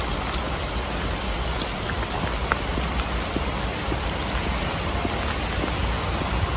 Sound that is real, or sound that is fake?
real